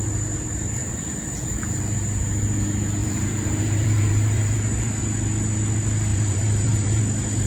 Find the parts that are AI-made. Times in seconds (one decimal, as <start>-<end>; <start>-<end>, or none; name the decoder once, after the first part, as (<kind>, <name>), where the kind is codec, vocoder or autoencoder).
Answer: 0.8-1.8 (vocoder, BigVGAN v2); 3.0-5.0; 6.1-7.0